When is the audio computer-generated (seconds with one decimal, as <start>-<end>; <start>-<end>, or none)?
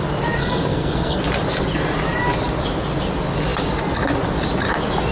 0.4-1.2